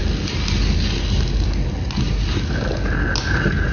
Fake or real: real